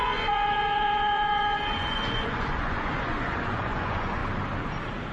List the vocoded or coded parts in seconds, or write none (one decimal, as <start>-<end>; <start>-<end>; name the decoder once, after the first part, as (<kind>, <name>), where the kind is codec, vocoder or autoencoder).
0.0-4.2 (vocoder, Vocos)